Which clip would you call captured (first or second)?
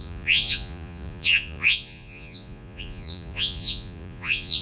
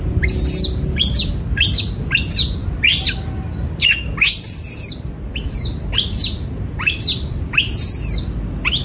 second